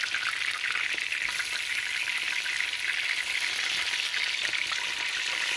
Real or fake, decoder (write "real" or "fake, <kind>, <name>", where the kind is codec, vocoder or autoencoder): real